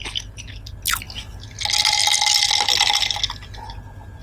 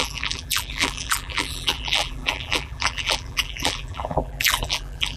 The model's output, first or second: second